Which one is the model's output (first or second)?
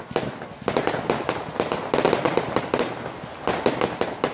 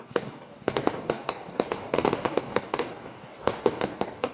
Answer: second